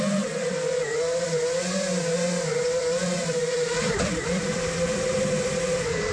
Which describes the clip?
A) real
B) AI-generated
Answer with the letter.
B